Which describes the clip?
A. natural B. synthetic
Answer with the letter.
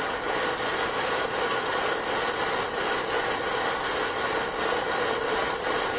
A